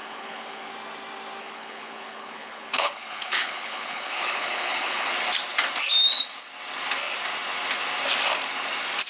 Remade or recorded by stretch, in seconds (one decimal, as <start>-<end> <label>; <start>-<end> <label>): 0.0-0.7 remade; 0.7-1.4 recorded; 1.4-5.1 remade; 5.1-9.1 recorded